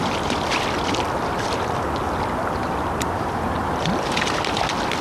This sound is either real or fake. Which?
fake